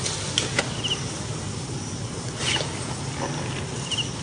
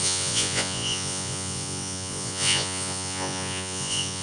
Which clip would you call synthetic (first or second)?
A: second